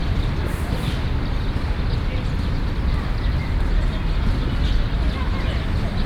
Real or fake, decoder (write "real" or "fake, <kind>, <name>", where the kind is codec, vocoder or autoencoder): fake, vocoder, BigVGAN v2